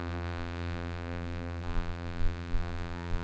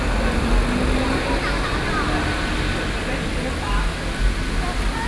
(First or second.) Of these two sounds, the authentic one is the second